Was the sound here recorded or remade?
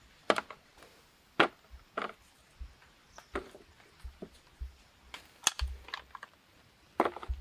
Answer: recorded